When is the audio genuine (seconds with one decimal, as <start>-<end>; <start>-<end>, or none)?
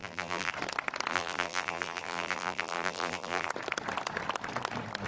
0.5-1.1; 3.5-5.1